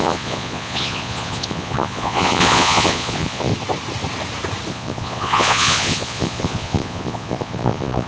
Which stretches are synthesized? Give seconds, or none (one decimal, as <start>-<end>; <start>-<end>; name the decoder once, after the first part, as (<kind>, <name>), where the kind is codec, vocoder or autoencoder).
0.0-3.5 (vocoder, Vocos); 4.7-8.1